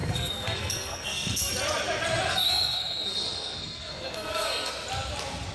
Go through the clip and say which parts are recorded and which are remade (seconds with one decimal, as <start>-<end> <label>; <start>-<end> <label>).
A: 0.0-1.5 remade; 1.5-2.3 recorded; 2.3-4.7 remade; 4.7-5.5 recorded

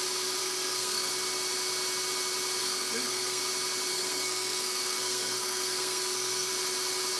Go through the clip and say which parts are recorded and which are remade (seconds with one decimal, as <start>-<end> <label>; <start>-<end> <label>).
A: 0.0-0.4 recorded; 0.4-1.1 remade; 1.1-2.6 recorded; 2.6-3.4 remade; 3.4-3.9 recorded; 3.9-6.5 remade; 6.5-7.2 recorded

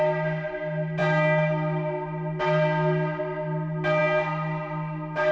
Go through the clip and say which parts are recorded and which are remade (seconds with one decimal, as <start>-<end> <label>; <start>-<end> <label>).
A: 0.0-5.3 recorded

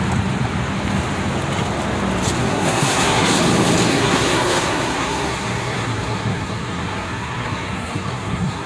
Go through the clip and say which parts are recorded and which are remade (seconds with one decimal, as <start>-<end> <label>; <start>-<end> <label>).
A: 0.0-2.4 recorded; 2.4-3.4 remade; 3.4-3.9 recorded; 3.9-8.7 remade